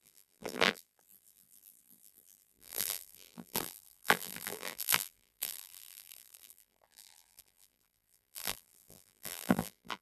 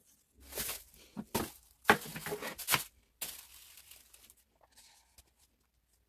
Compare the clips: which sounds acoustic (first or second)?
second